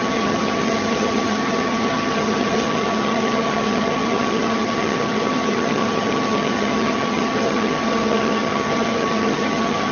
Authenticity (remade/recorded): remade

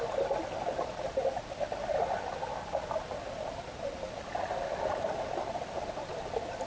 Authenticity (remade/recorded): recorded